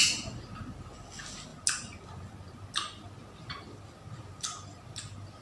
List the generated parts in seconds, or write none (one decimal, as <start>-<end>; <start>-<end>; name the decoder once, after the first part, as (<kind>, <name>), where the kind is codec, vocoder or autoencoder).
none

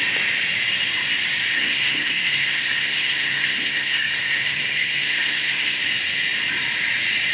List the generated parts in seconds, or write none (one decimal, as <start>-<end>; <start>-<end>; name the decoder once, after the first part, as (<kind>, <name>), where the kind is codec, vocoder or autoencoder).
1.5-5.8 (codec, SNAC)

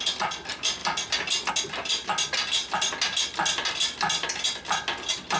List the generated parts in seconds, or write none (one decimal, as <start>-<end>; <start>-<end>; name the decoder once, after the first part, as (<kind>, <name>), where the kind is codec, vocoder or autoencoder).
none

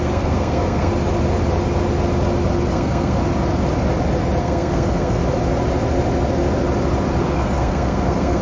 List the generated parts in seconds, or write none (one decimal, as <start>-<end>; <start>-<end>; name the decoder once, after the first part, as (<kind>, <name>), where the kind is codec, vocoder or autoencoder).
0.0-0.9 (codec, SNAC); 2.7-3.2; 4.4-5.2; 7.2-8.4

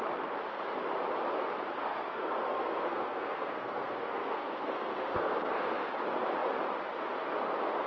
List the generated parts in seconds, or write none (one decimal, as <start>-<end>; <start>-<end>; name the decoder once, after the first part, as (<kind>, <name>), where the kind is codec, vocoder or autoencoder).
1.8-5.9 (codec, SNAC)